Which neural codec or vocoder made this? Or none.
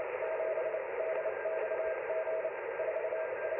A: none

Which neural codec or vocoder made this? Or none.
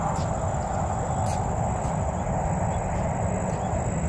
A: none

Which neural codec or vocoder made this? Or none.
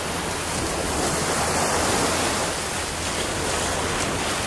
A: none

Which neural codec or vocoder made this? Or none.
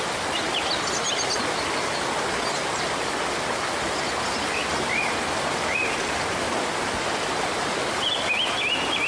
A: none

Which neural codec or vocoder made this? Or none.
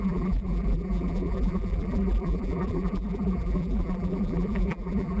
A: vocoder, BigVGAN v2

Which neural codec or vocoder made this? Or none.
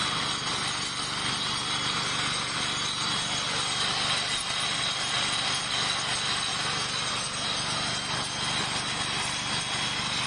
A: none